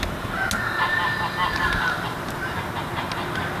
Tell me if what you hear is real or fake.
real